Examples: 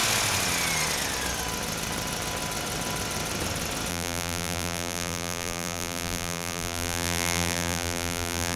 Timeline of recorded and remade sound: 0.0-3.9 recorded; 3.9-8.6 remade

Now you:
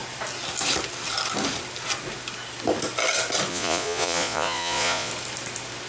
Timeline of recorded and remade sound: 0.0-3.5 recorded; 3.5-5.1 remade; 5.1-5.9 recorded

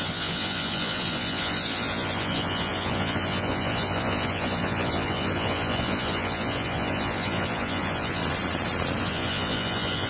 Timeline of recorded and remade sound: 0.0-8.2 remade; 8.2-9.0 recorded; 9.0-10.1 remade

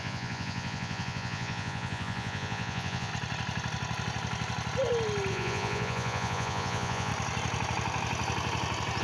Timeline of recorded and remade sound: 0.0-3.1 remade; 3.1-5.3 recorded; 5.3-7.1 remade; 7.1-9.0 recorded

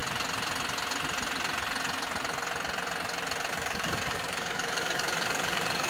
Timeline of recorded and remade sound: 0.0-3.5 recorded; 3.5-5.9 remade

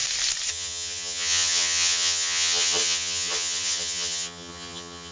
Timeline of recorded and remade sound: 0.0-0.5 recorded; 0.5-5.1 remade

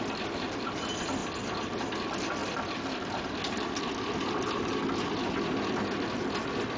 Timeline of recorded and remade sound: 0.0-1.2 remade; 1.2-1.8 recorded; 1.8-2.4 remade; 2.4-2.9 recorded; 2.9-4.8 remade; 4.8-6.8 recorded